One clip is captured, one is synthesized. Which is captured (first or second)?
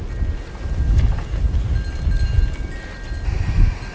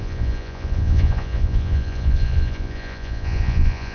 first